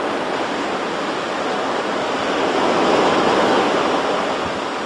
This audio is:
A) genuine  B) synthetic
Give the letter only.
A